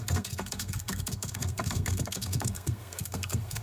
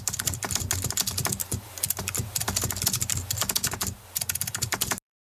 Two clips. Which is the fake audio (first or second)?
first